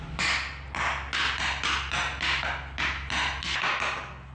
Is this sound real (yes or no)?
yes